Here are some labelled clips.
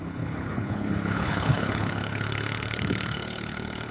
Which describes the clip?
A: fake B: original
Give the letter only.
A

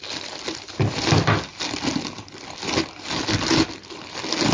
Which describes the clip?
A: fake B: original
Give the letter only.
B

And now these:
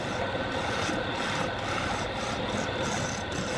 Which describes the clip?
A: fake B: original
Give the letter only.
B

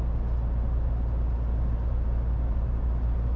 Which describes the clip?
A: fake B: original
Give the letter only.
B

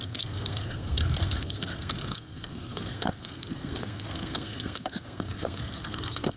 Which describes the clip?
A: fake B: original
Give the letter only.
A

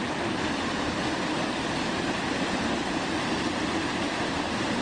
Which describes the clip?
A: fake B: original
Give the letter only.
B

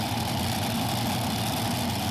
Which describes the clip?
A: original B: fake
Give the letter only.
A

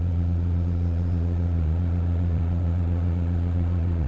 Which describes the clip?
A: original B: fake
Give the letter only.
B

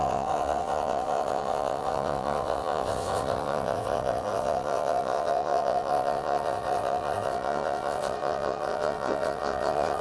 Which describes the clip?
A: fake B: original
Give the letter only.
A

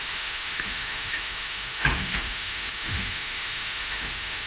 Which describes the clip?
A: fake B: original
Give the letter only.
A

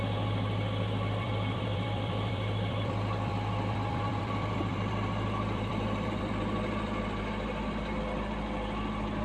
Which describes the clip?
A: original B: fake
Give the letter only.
B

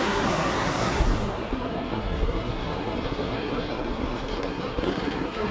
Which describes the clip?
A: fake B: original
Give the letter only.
A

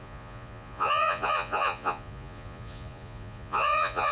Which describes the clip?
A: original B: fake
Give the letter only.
B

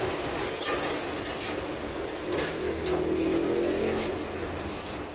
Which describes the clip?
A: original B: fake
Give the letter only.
A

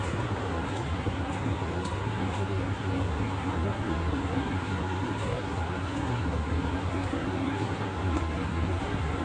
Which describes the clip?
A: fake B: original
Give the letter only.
A